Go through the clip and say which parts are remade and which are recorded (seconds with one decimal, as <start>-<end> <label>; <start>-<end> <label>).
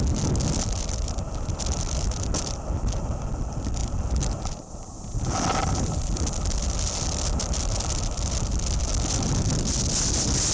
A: 0.0-10.5 recorded